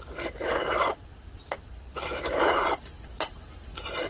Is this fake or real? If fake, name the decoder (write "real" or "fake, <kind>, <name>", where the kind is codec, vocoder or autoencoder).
real